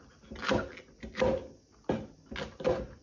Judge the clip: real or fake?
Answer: real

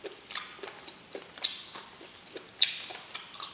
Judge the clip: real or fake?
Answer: real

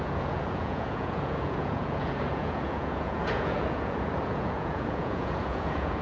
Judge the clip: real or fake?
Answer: fake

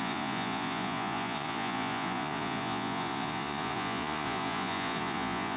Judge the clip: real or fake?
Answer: fake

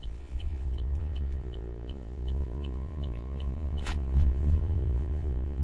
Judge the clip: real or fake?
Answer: fake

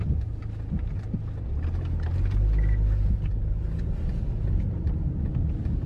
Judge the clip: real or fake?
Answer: real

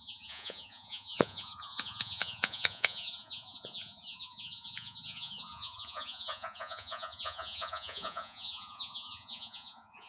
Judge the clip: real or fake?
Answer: fake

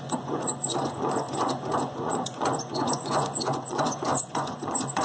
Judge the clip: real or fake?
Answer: fake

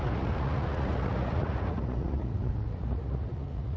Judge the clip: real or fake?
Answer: fake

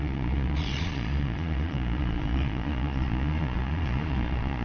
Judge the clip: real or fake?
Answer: fake